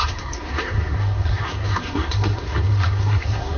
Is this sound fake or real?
fake